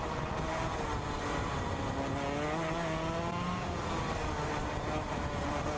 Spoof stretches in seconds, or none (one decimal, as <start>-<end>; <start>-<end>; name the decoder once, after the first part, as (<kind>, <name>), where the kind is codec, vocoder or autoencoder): none

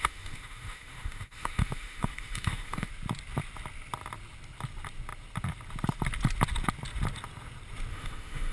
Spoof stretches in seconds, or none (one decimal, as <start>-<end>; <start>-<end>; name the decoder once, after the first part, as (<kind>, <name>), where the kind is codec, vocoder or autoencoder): 0.0-2.9 (autoencoder, DAC-VAE); 7.9-8.5

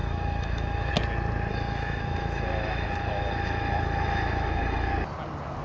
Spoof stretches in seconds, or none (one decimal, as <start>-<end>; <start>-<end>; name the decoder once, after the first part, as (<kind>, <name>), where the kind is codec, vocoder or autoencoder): 0.0-0.9 (autoencoder, DAC-VAE); 1.5-4.9